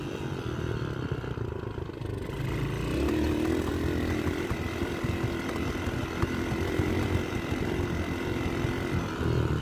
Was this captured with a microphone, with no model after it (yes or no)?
yes